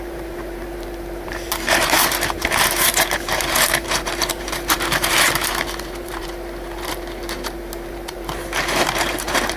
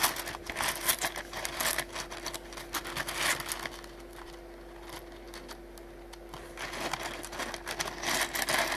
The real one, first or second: second